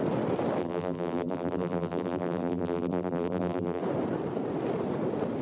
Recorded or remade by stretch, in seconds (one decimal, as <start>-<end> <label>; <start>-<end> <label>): 0.0-0.6 recorded; 0.6-3.8 remade; 3.8-5.4 recorded